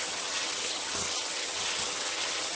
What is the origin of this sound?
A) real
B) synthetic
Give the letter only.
B